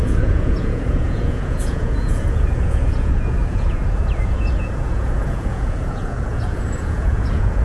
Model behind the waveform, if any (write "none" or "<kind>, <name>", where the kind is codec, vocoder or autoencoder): vocoder, Vocos